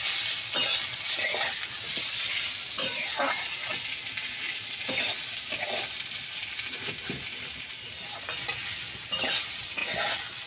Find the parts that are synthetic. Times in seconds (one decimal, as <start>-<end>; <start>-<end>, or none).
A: none